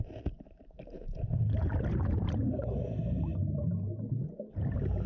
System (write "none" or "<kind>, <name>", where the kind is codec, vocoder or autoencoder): none